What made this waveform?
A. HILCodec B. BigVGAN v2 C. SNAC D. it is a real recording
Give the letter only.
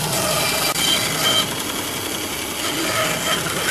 D